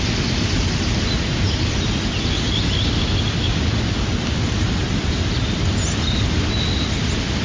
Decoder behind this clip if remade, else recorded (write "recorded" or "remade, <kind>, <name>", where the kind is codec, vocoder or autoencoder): recorded